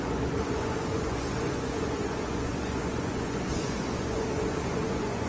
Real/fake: fake